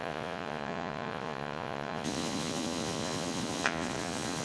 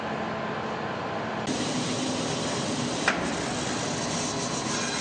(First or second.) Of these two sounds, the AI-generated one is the first